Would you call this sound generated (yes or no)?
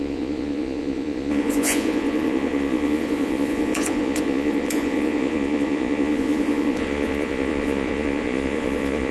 yes